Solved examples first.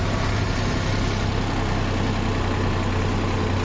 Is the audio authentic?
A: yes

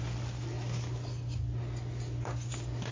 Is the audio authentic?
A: yes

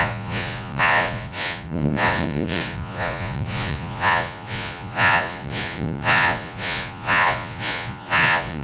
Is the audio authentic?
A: no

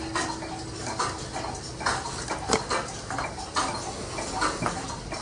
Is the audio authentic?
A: yes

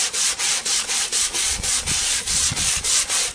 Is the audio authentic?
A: no